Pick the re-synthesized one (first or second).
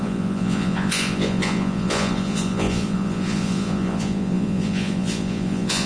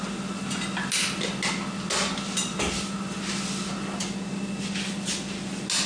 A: first